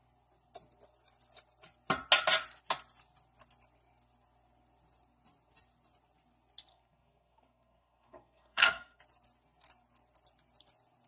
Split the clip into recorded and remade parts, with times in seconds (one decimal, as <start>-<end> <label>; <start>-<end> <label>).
0.0-6.7 recorded; 6.7-9.0 remade; 9.0-11.1 recorded